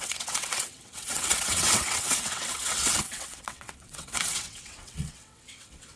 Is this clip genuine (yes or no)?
no